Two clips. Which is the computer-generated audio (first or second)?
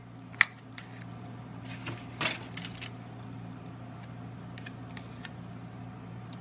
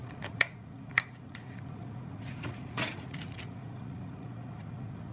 second